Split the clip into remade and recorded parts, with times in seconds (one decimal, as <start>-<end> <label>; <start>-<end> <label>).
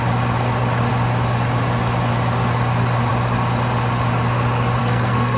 0.0-4.8 recorded; 4.8-5.4 remade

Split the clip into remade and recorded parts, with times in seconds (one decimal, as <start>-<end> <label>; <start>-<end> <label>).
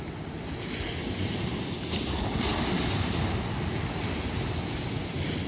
0.0-5.5 recorded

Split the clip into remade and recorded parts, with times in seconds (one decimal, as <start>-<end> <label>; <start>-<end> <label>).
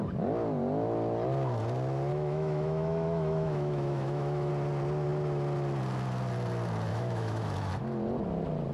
0.0-2.1 recorded; 2.1-4.5 remade; 4.5-6.9 recorded; 6.9-7.7 remade; 7.7-8.7 recorded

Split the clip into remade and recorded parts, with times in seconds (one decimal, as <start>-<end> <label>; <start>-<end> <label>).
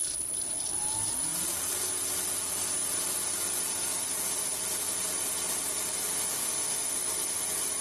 0.0-6.3 recorded; 6.3-7.1 remade; 7.1-7.8 recorded